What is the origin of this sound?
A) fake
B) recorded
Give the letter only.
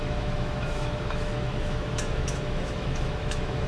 A